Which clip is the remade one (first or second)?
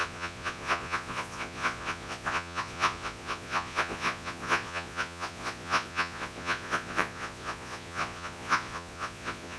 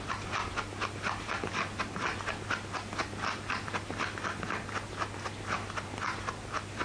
first